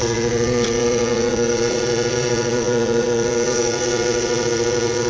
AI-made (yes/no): yes